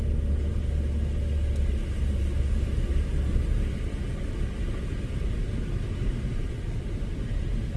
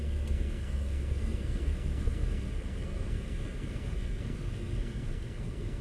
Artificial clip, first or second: second